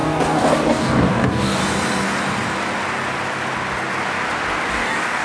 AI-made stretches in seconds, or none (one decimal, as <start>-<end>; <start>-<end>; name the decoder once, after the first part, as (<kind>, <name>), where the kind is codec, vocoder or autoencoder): 0.0-1.6 (codec, DAC); 4.7-5.2